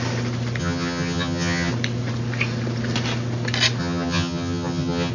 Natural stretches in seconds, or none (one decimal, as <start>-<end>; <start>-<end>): 0.0-0.6; 1.7-3.8